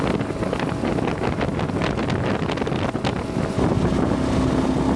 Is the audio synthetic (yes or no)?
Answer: no